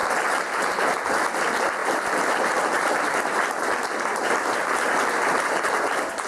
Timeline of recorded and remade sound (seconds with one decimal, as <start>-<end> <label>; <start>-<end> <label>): 0.0-1.8 recorded; 1.8-5.6 remade; 5.6-6.3 recorded